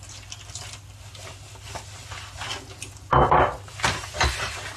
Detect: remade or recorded recorded